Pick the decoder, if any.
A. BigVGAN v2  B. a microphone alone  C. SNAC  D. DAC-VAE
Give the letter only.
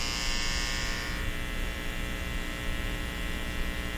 B